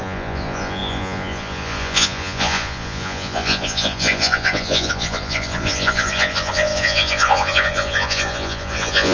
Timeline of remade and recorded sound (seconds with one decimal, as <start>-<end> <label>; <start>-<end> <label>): 0.0-9.1 remade